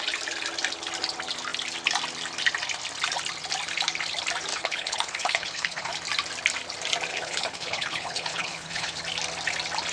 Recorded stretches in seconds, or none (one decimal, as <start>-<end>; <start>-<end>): 0.0-4.5; 5.9-7.1; 9.0-9.9

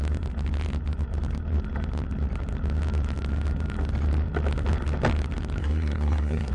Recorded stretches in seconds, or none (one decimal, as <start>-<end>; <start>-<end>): 0.0-5.6

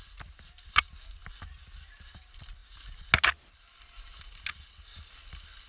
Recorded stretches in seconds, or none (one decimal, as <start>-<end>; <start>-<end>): 0.0-5.7